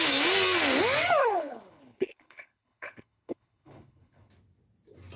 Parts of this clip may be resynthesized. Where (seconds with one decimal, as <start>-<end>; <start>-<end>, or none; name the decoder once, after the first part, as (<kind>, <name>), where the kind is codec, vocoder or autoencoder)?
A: 1.2-4.3 (codec, HILCodec)